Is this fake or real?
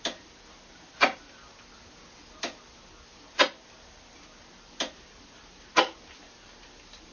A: real